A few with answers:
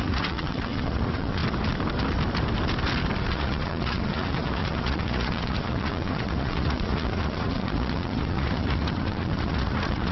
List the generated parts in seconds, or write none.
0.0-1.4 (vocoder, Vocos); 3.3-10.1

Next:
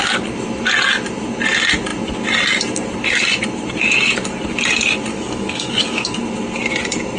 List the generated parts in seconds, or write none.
5.1-6.2 (codec, DAC)

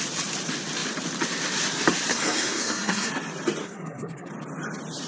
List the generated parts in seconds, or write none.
2.1-3.1 (codec, SNAC); 3.6-4.3

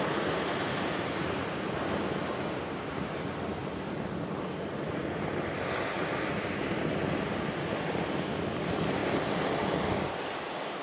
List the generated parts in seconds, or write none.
none